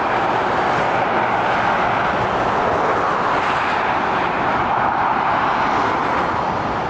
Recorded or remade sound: recorded